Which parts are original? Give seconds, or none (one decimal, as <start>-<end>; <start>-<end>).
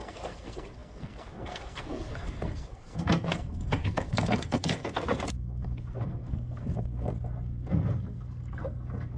none